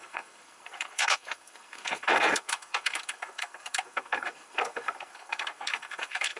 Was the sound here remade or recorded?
remade